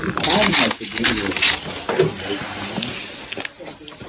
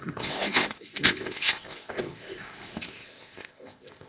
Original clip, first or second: first